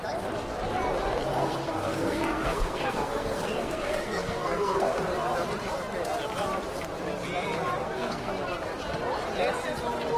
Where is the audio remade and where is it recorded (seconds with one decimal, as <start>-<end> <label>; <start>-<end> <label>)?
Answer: 0.0-1.3 recorded; 1.3-5.0 remade; 5.0-7.8 recorded; 7.8-8.3 remade; 8.3-10.2 recorded